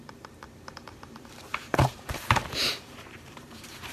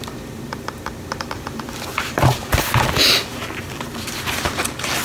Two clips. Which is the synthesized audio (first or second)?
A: first